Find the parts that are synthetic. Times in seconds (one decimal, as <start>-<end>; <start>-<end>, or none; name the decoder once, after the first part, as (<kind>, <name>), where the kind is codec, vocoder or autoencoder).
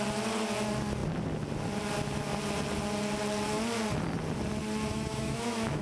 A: 4.9-5.8 (autoencoder, DAC-VAE)